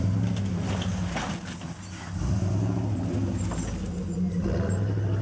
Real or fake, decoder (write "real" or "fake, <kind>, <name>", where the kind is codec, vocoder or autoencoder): real